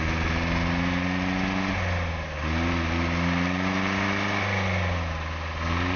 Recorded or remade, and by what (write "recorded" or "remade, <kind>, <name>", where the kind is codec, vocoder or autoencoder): recorded